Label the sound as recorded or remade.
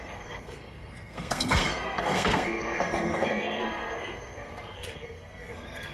remade